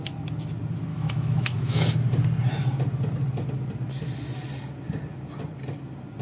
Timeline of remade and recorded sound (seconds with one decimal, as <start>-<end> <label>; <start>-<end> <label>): 0.0-0.9 recorded; 0.9-2.0 remade; 2.0-6.2 recorded